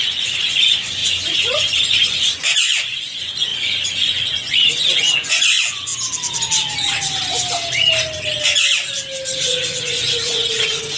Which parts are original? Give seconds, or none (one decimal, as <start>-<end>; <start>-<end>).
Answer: 5.9-9.4